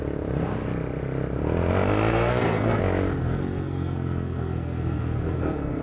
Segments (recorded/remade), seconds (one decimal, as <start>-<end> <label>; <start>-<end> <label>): 0.0-2.1 recorded; 2.1-2.8 remade; 2.8-3.2 recorded; 3.2-5.8 remade